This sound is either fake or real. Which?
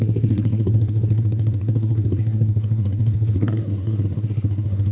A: fake